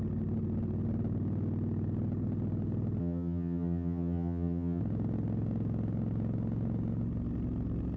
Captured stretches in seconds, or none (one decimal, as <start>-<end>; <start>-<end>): 0.0-3.0; 4.8-8.0